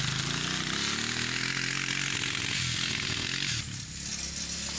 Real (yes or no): yes